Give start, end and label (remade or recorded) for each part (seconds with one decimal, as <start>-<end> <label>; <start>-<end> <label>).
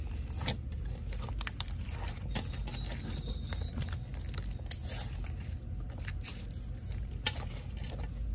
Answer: 0.0-8.3 recorded